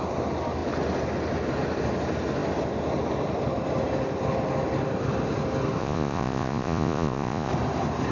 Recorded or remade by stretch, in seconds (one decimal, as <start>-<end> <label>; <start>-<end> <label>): 0.0-5.8 recorded; 5.8-7.5 remade; 7.5-8.1 recorded